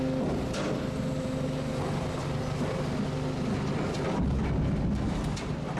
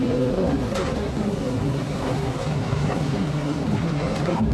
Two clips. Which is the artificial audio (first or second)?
second